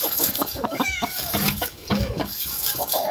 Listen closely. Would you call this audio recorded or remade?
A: remade